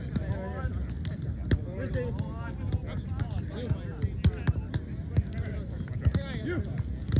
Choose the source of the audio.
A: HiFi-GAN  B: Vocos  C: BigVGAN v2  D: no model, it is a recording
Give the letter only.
D